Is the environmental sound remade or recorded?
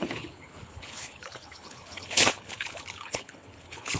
remade